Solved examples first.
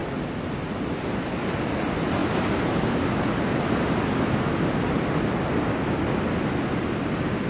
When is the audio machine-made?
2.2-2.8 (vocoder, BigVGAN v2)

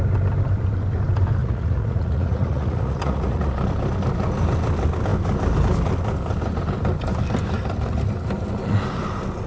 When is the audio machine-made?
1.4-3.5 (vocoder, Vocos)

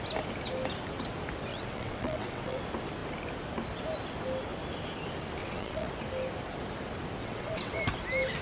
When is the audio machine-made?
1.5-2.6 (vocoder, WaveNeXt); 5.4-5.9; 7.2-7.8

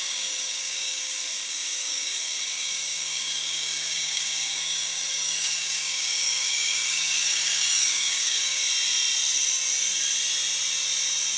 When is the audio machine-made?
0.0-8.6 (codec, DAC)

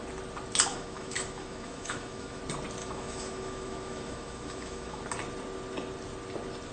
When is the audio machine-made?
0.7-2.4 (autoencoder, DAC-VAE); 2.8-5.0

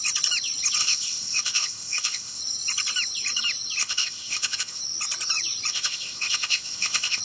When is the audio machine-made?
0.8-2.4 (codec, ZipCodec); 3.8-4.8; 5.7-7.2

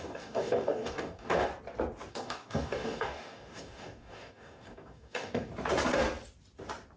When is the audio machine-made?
0.0-1.5 (codec, DAC); 2.1-5.5